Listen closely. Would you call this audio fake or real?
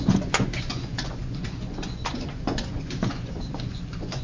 fake